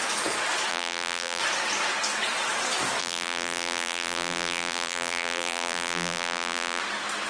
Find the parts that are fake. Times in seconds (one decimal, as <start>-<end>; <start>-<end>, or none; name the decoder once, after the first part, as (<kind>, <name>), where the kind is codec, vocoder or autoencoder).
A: 0.7-1.4 (vocoder, BigVGAN v2); 3.0-6.8